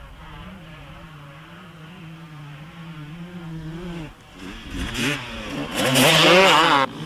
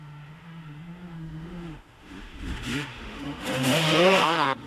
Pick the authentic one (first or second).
first